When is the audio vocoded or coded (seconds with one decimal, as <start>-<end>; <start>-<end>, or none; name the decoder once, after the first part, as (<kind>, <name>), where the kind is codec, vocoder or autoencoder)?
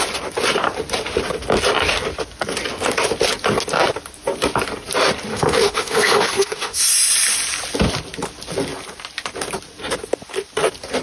5.3-6.8 (autoencoder, DAC-VAE)